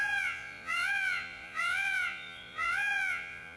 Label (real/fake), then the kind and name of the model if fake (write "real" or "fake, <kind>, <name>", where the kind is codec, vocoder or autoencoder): fake, vocoder, Vocos